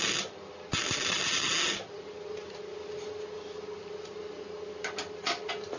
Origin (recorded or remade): recorded